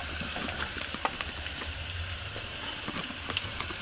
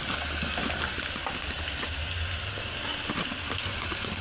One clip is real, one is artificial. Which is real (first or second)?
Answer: second